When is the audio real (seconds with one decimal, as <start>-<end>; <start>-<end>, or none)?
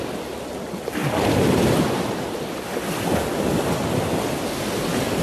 0.0-5.2